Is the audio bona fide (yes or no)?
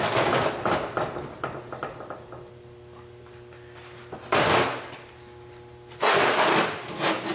yes